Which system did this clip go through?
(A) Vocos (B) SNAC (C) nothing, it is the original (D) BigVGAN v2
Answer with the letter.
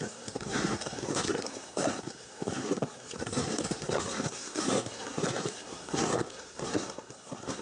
B